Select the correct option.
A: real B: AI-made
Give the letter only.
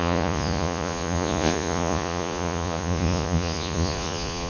B